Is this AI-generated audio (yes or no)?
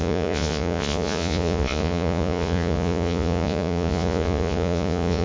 yes